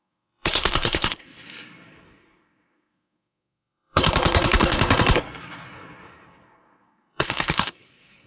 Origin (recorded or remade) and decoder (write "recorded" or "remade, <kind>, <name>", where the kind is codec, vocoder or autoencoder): remade, codec, SNAC